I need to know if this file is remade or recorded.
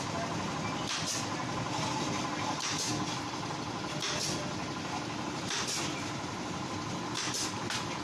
recorded